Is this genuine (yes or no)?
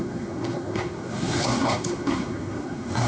no